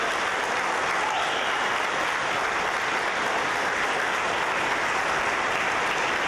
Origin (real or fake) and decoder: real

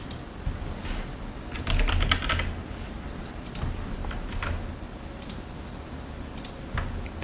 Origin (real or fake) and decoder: real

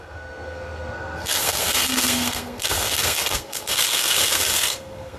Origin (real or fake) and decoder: fake, codec, SNAC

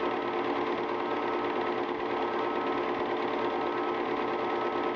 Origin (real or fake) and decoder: real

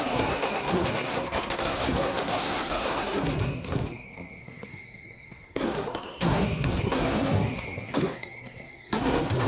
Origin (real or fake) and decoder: fake, codec, SNAC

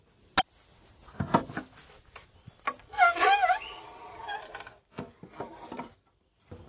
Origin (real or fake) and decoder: real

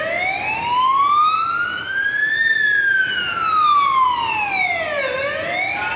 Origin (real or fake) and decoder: real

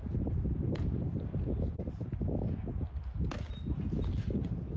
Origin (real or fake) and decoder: real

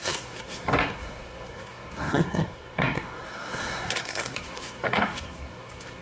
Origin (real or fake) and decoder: fake, codec, SNAC